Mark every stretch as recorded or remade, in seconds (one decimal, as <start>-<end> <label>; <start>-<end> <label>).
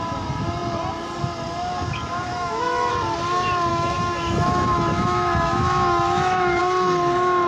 0.0-2.3 recorded; 2.3-2.9 remade; 2.9-3.7 recorded; 3.7-6.6 remade; 6.6-7.5 recorded